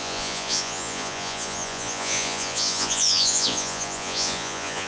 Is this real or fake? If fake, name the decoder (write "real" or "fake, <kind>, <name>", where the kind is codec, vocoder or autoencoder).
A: fake, vocoder, Vocos